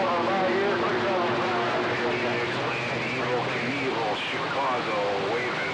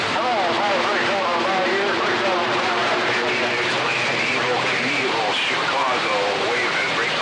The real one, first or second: first